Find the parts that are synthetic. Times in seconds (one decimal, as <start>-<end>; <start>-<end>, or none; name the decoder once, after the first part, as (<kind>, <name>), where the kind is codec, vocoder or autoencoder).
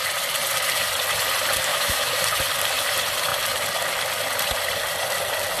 1.7-2.2 (autoencoder, DAC-VAE)